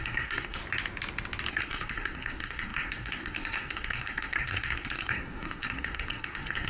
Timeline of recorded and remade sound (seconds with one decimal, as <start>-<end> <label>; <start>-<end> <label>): 0.0-0.6 remade; 0.6-1.5 recorded; 1.5-6.7 remade